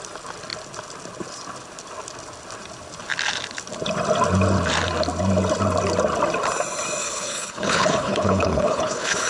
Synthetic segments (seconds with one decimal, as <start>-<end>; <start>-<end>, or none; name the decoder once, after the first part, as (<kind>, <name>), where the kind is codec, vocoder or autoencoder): 7.0-9.3 (codec, HILCodec)